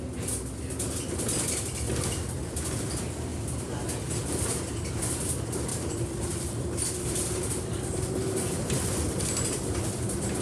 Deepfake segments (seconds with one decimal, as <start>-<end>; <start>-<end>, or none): 3.3-3.8; 5.7-9.8